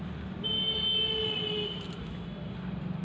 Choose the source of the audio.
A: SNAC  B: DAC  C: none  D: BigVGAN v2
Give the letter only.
C